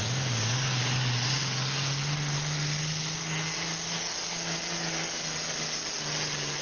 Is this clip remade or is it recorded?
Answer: recorded